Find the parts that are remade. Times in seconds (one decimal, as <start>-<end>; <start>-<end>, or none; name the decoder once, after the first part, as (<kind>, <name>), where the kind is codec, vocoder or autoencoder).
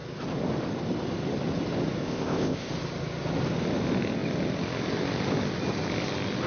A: 2.0-2.7 (codec, ZipCodec)